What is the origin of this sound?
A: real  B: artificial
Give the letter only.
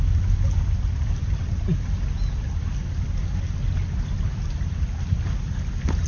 A